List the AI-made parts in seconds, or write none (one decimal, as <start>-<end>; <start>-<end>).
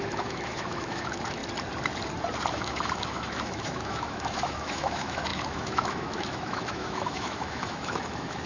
0.0-1.4; 2.5-8.5